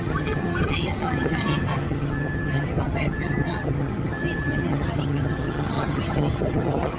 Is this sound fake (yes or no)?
yes